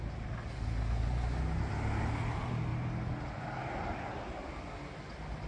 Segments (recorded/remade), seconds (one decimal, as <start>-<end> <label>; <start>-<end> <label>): 0.0-5.5 recorded